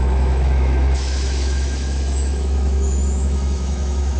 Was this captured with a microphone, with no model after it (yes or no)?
no